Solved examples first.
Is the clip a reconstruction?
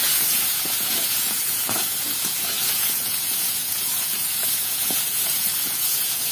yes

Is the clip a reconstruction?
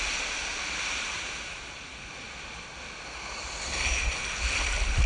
no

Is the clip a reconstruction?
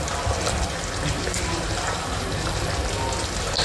no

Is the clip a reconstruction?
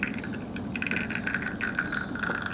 no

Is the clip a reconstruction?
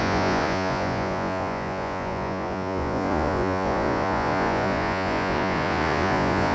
yes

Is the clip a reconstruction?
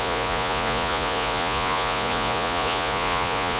yes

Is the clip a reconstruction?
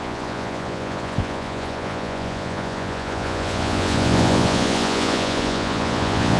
yes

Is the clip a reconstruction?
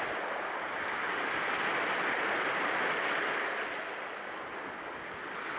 no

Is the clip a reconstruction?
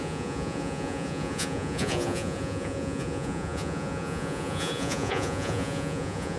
yes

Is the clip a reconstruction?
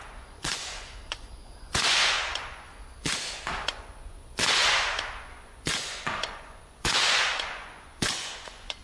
yes